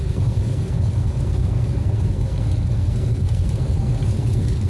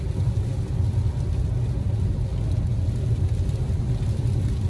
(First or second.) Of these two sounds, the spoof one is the first